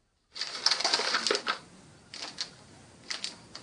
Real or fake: real